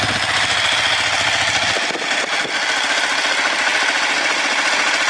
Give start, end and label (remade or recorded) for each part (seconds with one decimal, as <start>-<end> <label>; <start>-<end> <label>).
0.0-5.1 recorded